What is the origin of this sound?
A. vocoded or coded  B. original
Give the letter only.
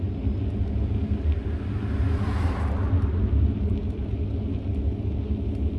B